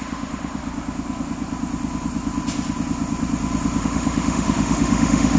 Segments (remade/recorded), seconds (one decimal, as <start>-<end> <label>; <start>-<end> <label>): 0.0-0.6 remade; 0.6-3.8 recorded; 3.8-5.4 remade